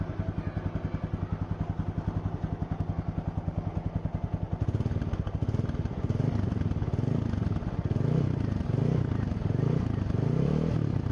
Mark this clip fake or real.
real